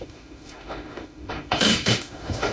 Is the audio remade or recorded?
remade